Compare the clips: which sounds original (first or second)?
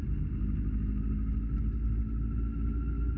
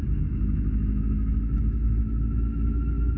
first